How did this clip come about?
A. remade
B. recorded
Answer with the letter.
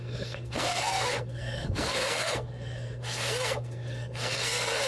A